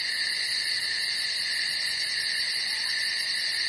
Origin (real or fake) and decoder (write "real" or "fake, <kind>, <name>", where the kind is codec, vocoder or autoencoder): fake, vocoder, Vocos